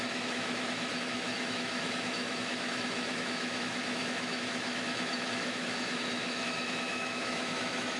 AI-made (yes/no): yes